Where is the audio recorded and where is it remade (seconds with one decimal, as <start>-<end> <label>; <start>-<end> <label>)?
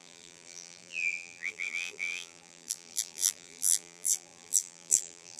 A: 0.0-5.4 remade